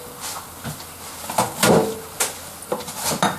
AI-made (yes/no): no